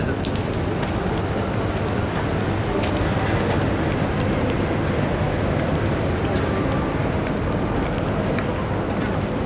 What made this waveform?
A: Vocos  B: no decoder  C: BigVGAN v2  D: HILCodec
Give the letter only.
B